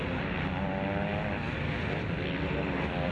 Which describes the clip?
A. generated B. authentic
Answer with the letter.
B